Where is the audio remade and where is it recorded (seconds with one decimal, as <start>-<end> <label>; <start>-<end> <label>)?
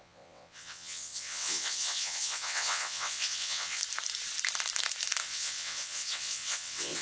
0.0-3.8 remade; 3.8-5.2 recorded; 5.2-7.0 remade